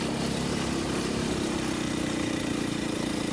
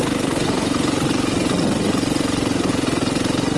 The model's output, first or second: first